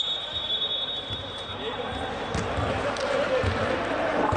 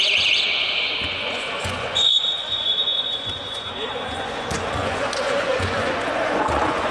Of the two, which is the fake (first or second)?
second